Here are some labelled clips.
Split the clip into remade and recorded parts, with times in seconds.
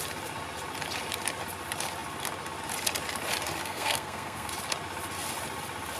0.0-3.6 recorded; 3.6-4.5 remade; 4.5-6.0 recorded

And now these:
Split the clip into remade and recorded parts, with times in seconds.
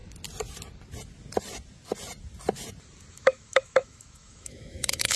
0.0-3.1 recorded; 3.1-5.2 remade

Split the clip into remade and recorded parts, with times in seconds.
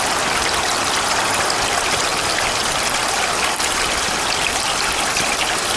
0.0-5.8 recorded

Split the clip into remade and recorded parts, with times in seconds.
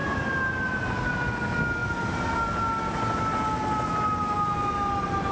0.0-5.3 recorded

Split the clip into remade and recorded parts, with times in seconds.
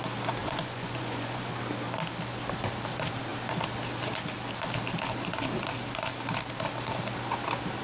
0.0-0.4 recorded; 0.4-1.5 remade; 1.5-7.8 recorded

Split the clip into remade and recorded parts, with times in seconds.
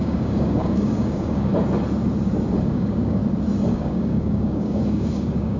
0.0-1.5 remade; 1.5-2.7 recorded; 2.7-3.2 remade; 3.2-3.7 recorded; 3.7-5.6 remade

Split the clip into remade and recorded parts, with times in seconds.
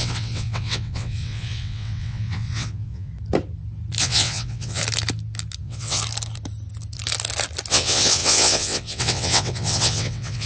0.0-3.1 remade; 3.1-4.0 recorded; 4.0-4.8 remade; 4.8-5.6 recorded; 5.6-6.0 remade; 6.0-7.7 recorded; 7.7-10.5 remade